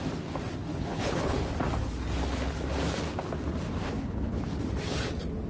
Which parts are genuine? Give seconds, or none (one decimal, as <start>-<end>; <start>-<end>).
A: 0.0-0.7; 1.5-3.8; 4.4-5.5